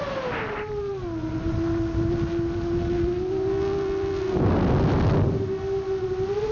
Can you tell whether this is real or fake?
real